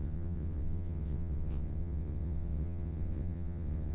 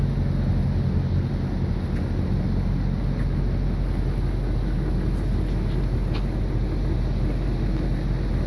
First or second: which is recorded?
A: second